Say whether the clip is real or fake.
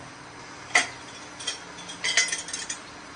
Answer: real